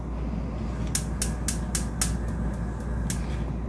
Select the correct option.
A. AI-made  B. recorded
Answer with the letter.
B